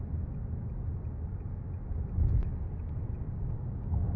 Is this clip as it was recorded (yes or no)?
yes